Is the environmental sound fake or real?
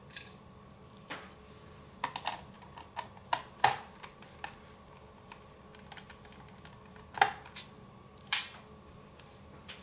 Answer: real